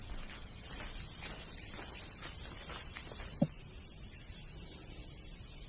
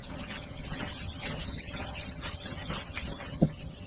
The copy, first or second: second